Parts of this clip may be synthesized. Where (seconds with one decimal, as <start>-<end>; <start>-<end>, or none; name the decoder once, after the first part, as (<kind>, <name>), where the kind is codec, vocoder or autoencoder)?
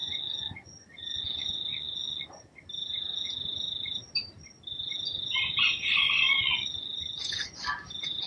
0.0-2.4 (vocoder, Vocos); 5.8-7.6